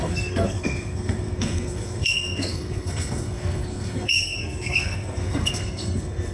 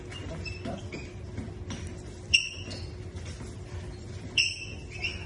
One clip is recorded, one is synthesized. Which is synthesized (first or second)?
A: first